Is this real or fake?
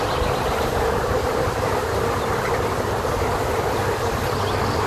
real